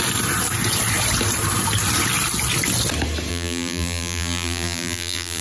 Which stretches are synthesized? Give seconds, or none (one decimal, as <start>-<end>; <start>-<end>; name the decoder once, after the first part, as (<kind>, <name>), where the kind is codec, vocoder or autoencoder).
3.3-5.4 (vocoder, BigVGAN v2)